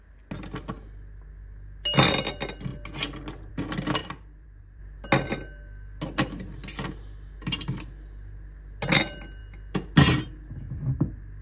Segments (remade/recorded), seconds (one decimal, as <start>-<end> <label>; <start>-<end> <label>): 0.0-4.0 recorded; 4.0-4.8 remade; 4.8-11.4 recorded